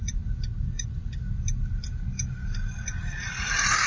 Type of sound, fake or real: real